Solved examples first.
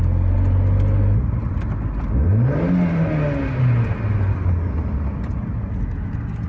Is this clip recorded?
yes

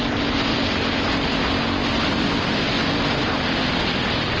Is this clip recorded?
yes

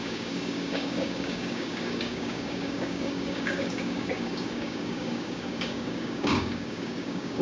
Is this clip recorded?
no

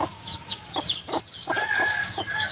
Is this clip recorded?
no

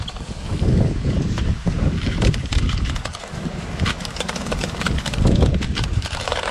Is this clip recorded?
no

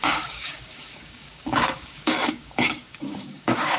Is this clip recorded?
no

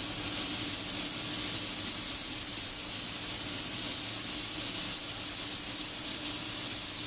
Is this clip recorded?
yes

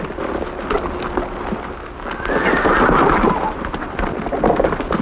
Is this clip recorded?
yes